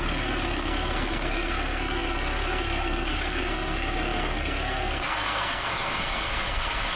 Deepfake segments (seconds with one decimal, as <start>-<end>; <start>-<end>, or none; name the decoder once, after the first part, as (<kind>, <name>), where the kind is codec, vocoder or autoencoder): 0.0-7.0 (codec, SNAC)